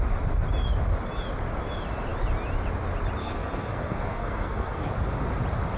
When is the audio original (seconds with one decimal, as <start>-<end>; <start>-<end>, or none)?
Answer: 0.0-3.2; 4.9-5.8

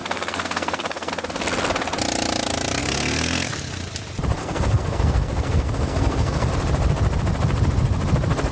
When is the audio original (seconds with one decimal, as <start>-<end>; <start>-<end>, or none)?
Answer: 1.1-2.8; 3.5-4.4; 6.5-8.5

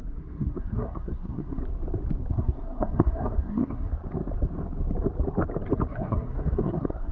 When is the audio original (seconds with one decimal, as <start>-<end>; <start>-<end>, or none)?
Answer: 1.6-2.3; 3.9-5.9

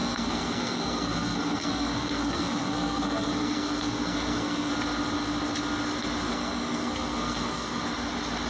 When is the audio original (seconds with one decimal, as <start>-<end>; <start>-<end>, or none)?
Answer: 4.7-6.3; 7.8-8.5

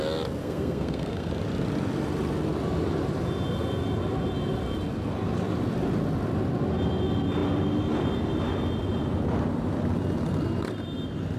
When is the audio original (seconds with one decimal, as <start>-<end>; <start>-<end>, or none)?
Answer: 0.0-0.4; 1.3-11.4

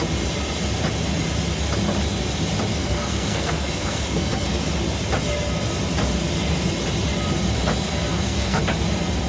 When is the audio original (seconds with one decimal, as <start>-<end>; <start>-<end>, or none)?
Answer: 0.0-2.7; 4.6-8.1; 8.6-9.3